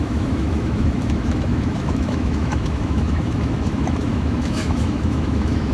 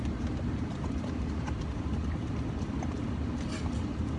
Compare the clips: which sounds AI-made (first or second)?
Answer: first